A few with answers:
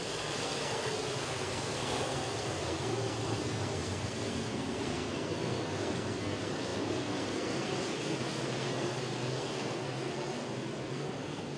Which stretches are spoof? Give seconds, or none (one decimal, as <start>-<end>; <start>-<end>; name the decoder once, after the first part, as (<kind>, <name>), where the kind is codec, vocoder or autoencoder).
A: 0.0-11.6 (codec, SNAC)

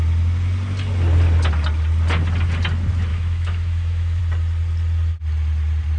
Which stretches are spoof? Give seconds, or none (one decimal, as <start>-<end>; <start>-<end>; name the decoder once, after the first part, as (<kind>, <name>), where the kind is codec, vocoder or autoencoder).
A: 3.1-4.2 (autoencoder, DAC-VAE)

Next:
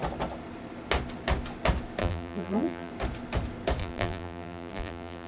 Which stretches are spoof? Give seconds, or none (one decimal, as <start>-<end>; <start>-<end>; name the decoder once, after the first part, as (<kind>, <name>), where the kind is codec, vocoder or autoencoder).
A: 2.0-2.9 (vocoder, BigVGAN v2); 3.8-5.3

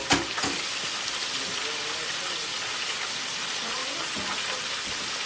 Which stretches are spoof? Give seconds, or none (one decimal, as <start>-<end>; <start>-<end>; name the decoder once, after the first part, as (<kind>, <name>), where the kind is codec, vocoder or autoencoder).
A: none

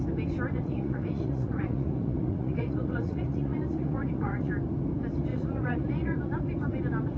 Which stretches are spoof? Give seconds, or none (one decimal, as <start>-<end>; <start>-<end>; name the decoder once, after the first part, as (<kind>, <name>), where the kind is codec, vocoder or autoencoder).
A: 0.5-4.5 (vocoder, Vocos); 5.3-6.3

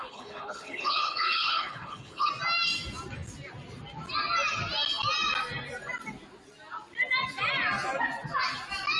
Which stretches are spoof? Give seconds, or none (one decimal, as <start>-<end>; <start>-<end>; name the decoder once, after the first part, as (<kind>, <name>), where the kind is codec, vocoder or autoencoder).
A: 0.0-2.3 (codec, HILCodec)

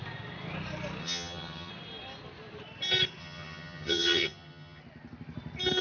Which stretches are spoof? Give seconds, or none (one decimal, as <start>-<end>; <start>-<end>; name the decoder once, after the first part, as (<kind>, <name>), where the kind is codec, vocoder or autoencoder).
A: 1.0-1.7 (vocoder, HiFi-GAN); 3.2-4.8

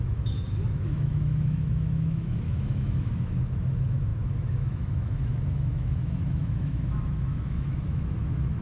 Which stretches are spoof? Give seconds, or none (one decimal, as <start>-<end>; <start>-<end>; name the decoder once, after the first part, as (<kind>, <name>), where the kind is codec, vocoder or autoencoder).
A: 0.0-8.6 (autoencoder, DAC-VAE)